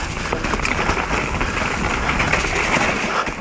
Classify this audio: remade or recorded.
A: recorded